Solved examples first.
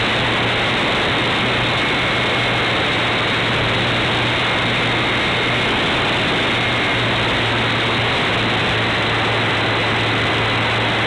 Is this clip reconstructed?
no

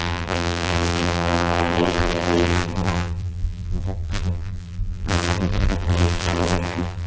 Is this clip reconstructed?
yes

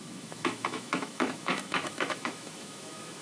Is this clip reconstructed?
yes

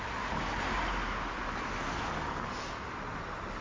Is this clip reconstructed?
no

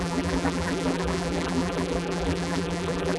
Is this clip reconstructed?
yes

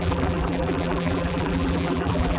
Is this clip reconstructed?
yes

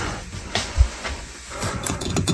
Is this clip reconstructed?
yes